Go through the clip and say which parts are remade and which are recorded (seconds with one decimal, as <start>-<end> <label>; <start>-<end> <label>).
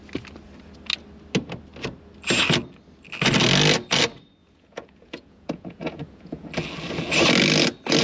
0.0-4.4 recorded; 4.4-6.5 remade; 6.5-8.0 recorded